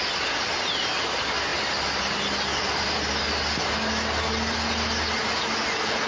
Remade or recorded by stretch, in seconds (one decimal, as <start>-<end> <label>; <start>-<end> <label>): 0.0-6.1 recorded